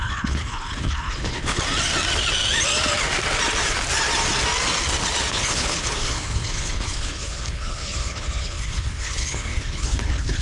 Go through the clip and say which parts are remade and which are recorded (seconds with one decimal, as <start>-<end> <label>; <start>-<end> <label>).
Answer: 0.0-1.6 remade; 1.6-5.3 recorded; 5.3-10.4 remade